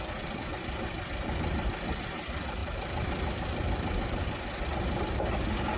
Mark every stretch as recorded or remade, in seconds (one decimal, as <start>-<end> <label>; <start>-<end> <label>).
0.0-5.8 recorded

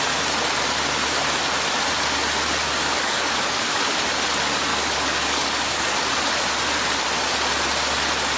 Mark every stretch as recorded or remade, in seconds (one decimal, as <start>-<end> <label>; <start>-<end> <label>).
0.0-2.6 recorded; 2.6-4.0 remade; 4.0-4.7 recorded; 4.7-6.1 remade; 6.1-8.4 recorded

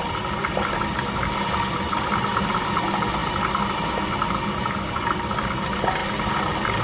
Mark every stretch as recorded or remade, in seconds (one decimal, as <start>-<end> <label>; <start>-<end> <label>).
0.0-6.8 recorded

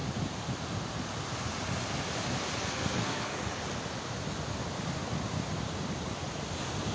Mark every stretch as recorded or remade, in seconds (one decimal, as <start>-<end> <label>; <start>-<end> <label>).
0.0-2.6 recorded; 2.6-3.6 remade; 3.6-6.9 recorded

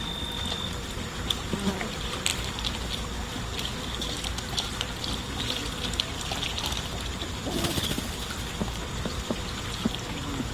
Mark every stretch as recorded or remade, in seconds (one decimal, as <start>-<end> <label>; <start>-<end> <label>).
0.0-10.5 recorded